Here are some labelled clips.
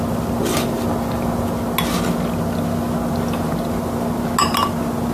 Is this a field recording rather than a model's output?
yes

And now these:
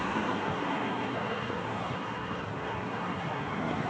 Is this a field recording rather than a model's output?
no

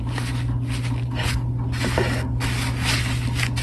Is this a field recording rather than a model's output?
yes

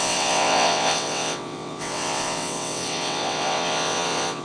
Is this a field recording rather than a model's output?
no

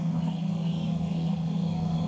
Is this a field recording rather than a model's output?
no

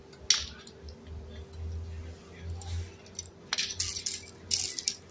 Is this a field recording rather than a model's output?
yes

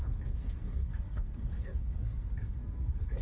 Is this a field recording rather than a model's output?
no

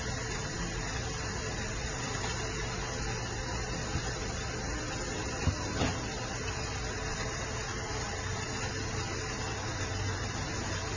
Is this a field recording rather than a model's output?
yes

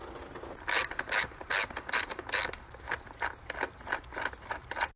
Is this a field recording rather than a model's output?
yes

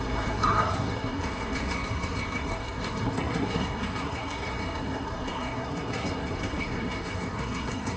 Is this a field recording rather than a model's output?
no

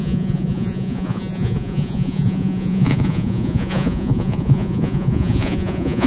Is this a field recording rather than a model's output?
no